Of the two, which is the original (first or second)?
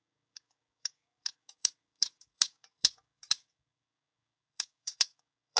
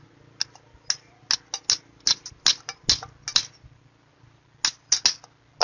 second